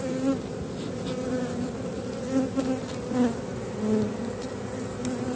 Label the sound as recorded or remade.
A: recorded